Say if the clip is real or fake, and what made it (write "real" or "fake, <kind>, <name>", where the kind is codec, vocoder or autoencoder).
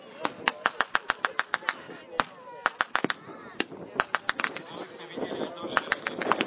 real